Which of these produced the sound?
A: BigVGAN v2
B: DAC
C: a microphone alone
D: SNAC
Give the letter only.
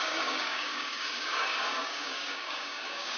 B